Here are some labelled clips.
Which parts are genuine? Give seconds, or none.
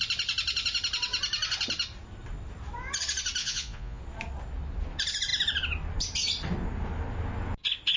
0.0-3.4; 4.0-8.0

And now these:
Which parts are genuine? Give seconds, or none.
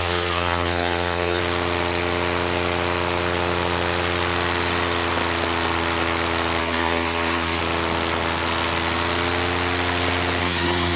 1.4-6.6; 7.6-10.4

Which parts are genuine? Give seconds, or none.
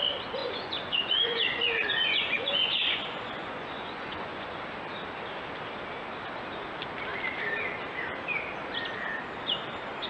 0.0-0.4; 4.6-10.1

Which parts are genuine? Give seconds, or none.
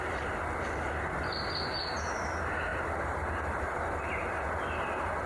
0.0-2.7; 4.5-5.3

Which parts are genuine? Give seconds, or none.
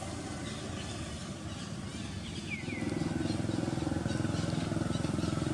0.0-5.5